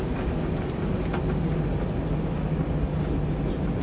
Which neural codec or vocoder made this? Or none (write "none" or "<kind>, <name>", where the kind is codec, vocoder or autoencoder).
none